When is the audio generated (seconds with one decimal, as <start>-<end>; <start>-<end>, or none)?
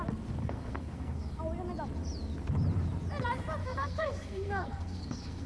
0.4-1.4; 3.6-5.5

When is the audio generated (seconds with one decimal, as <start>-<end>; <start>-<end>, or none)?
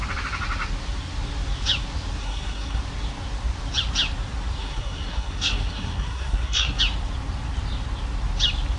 2.2-2.8; 4.6-6.8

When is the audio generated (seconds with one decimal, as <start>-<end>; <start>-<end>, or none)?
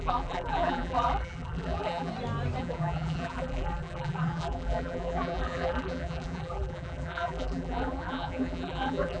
0.0-2.1; 2.6-9.2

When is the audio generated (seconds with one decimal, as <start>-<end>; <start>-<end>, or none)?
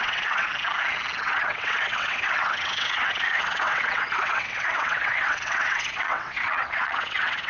0.0-0.5; 1.2-7.5